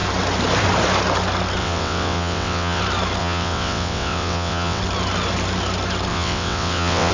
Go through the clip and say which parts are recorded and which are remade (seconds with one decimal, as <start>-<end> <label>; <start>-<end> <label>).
0.0-1.6 recorded; 1.6-2.8 remade; 2.8-3.2 recorded; 3.2-4.8 remade; 4.8-6.1 recorded; 6.1-7.1 remade